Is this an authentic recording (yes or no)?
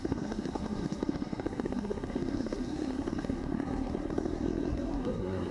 no